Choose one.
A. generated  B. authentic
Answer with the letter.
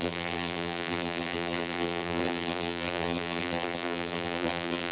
A